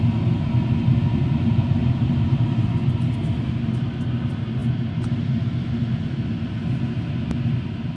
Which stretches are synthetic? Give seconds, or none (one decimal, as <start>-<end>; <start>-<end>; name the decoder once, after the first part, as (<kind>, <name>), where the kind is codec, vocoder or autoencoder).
1.8-2.7 (vocoder, BigVGAN v2)